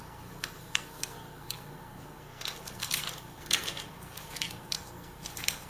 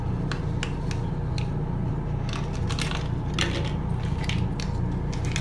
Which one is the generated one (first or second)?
first